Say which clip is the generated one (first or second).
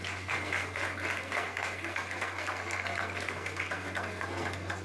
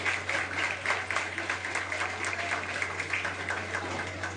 first